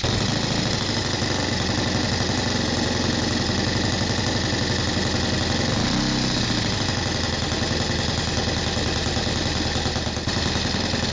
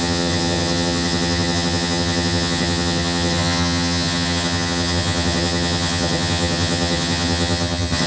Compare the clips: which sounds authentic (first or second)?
first